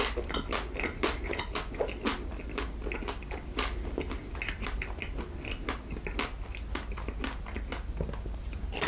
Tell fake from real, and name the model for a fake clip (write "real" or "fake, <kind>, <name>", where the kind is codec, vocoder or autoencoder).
real